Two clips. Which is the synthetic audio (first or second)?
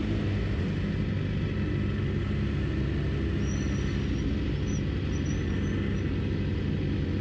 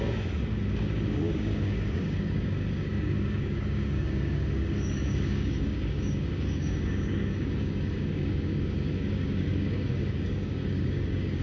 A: second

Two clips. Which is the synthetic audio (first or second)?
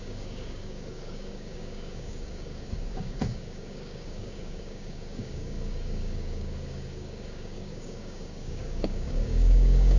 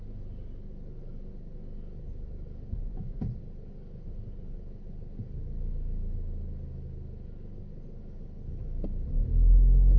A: first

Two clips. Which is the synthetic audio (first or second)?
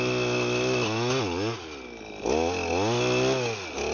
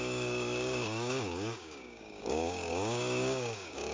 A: second